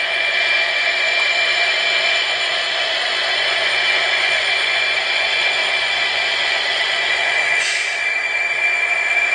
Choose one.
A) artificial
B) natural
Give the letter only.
A